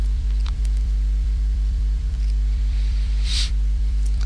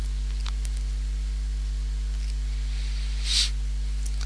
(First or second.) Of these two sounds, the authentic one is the second